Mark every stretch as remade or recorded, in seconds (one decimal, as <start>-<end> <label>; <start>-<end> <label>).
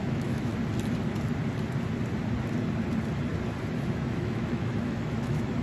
0.0-0.5 remade; 0.5-3.9 recorded; 3.9-5.6 remade